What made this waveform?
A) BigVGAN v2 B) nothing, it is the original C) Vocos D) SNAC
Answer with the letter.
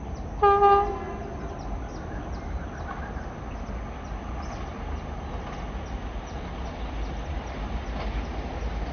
B